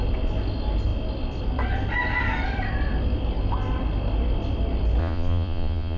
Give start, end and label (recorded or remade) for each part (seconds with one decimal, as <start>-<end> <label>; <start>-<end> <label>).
0.0-5.0 recorded; 5.0-6.0 remade